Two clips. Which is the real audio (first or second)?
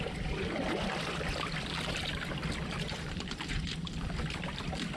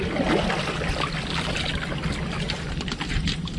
second